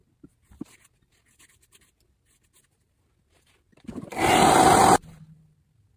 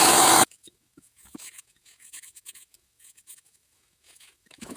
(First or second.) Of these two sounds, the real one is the first